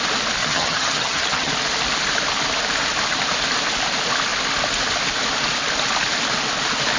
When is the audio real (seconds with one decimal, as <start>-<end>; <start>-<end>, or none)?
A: 0.0-0.4; 1.5-7.0